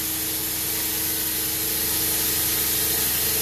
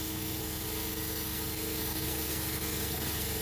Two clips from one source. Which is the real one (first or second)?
first